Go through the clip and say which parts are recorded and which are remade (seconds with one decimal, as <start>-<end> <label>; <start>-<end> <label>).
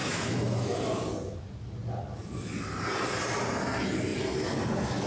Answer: 0.0-0.8 remade; 0.8-5.1 recorded